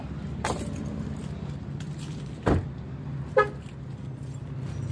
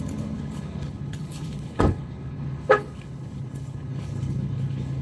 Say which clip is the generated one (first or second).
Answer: second